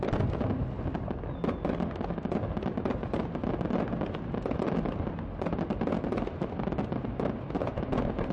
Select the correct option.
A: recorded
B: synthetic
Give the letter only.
A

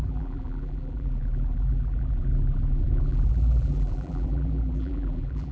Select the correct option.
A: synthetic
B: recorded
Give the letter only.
A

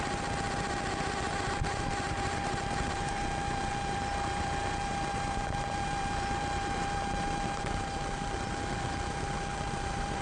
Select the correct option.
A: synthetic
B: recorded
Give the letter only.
A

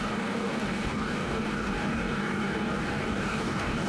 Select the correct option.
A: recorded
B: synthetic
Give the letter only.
B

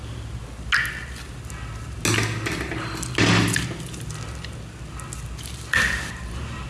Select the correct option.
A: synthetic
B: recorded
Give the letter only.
B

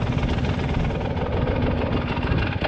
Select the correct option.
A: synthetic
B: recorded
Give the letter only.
B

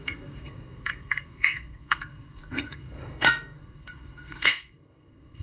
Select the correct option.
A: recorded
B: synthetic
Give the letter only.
B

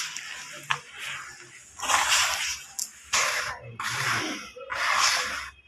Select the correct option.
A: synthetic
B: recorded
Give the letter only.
B